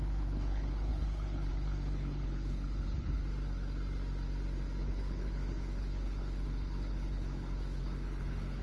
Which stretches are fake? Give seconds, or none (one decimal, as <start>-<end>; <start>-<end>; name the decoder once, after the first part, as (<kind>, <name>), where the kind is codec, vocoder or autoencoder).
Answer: 0.0-3.2 (codec, HILCodec); 4.8-8.6